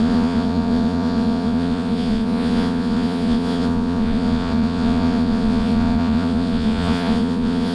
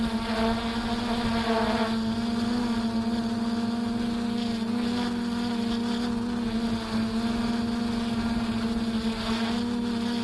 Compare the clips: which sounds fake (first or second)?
first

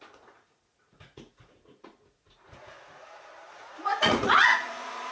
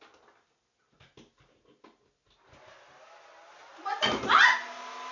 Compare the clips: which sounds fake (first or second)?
first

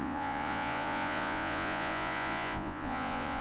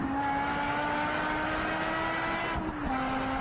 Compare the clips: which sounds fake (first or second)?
first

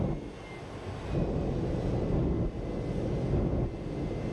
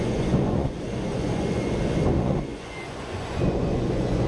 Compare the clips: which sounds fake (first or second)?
second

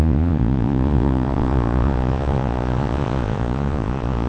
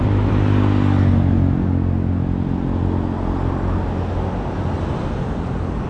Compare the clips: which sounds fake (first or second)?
first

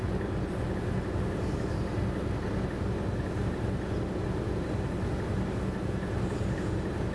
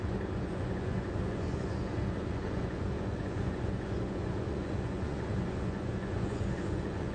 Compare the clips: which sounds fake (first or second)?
second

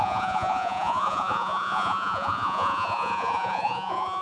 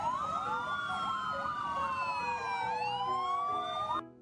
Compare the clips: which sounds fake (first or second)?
first